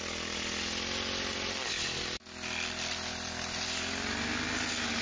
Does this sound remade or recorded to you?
recorded